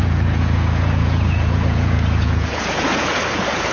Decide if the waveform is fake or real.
fake